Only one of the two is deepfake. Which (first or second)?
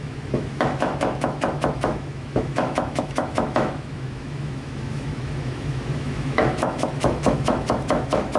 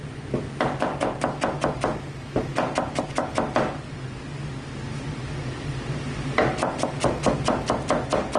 first